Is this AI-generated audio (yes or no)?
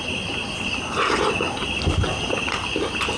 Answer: no